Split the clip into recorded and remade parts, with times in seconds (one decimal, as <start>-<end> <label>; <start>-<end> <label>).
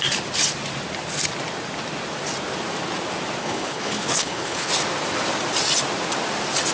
0.0-3.4 recorded; 3.4-4.7 remade; 4.7-6.7 recorded